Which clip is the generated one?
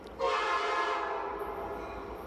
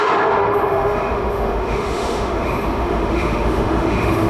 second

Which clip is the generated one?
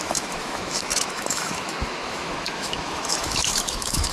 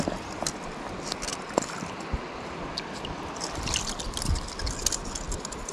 first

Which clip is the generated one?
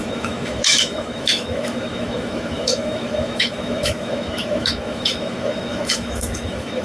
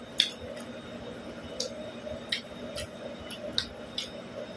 first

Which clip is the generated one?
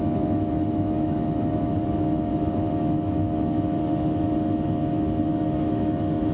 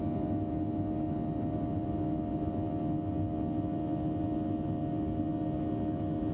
first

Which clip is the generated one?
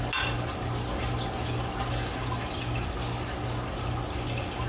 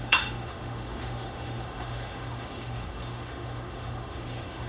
second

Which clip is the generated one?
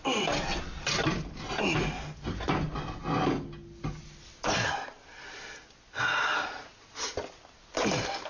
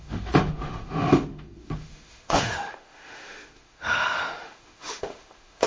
second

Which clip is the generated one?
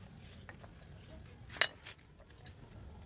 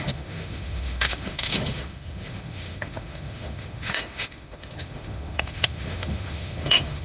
second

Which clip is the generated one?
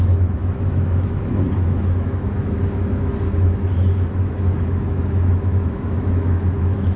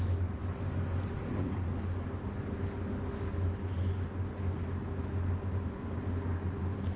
first